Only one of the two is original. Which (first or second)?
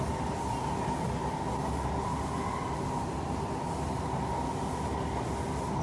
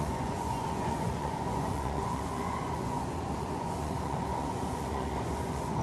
first